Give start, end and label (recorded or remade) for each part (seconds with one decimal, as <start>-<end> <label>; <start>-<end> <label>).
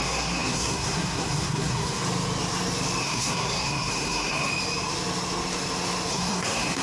0.0-2.0 remade; 2.0-3.0 recorded; 3.0-4.5 remade; 4.5-6.1 recorded; 6.1-6.8 remade